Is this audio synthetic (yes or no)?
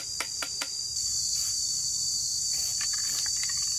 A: yes